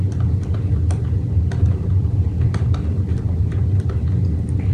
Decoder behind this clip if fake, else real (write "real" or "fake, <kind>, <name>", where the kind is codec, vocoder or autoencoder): real